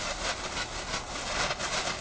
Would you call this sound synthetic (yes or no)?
no